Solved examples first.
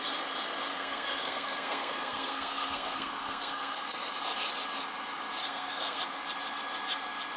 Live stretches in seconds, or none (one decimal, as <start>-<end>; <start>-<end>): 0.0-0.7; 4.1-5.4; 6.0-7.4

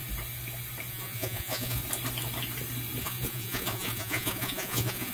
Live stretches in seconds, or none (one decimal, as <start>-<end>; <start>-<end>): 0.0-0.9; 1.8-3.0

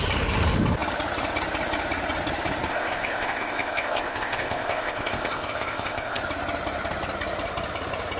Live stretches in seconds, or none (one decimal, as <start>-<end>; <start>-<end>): 0.0-2.7; 6.2-8.2